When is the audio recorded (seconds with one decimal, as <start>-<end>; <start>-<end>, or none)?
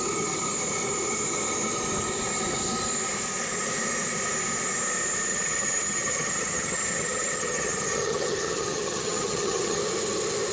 0.0-5.3; 9.8-10.5